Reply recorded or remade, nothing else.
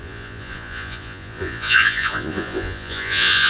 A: remade